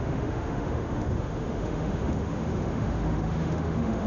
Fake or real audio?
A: fake